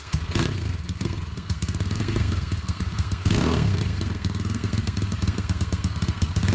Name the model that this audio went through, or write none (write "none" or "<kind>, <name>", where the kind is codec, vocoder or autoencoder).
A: codec, SNAC